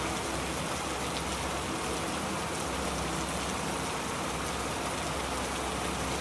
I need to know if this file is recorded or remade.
recorded